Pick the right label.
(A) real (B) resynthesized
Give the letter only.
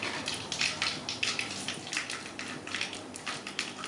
A